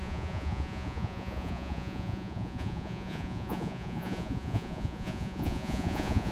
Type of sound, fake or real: fake